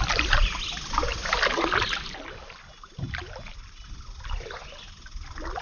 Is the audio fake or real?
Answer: real